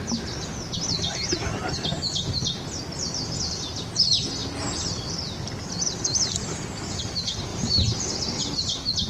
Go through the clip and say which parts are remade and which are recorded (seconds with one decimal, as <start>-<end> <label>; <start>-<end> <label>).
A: 0.0-4.4 recorded; 4.4-6.0 remade; 6.0-7.5 recorded; 7.5-8.2 remade; 8.2-9.1 recorded